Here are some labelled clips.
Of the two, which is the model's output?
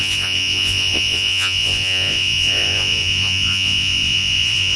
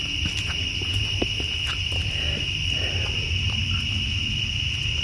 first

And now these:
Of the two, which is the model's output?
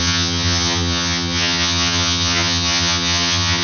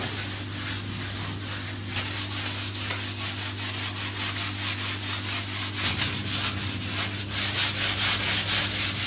first